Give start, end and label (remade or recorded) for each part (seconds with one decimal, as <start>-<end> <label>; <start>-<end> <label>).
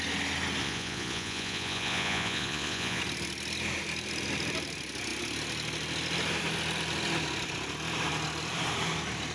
0.0-0.6 recorded; 0.6-3.0 remade; 3.0-9.3 recorded